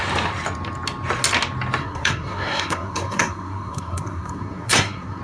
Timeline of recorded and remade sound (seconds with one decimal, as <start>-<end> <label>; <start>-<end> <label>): 0.0-1.8 recorded; 1.8-5.2 remade